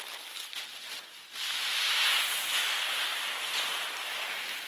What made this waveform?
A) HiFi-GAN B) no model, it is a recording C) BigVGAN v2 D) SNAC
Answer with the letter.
B